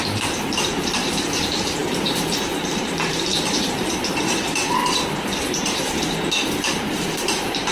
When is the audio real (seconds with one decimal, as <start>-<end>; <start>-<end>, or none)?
none